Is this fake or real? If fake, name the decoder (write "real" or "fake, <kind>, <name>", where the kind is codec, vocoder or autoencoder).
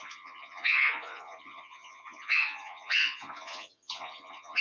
fake, vocoder, Vocos